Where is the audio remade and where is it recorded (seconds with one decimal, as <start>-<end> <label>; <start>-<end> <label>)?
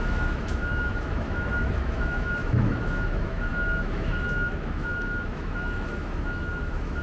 0.0-7.0 remade